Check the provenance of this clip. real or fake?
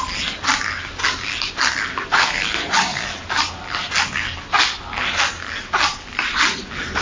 real